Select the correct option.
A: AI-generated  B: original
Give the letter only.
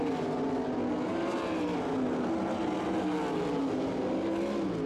B